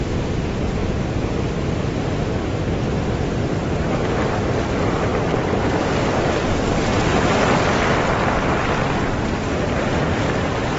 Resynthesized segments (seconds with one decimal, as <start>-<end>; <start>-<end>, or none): none